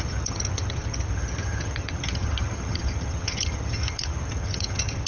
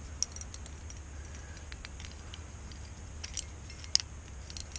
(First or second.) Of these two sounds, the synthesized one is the first